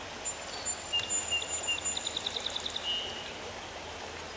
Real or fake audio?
real